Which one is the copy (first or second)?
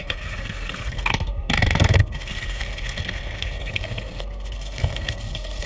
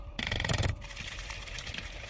first